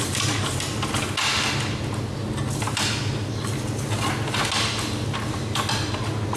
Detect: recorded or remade recorded